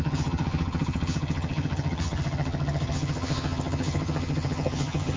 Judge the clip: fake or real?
fake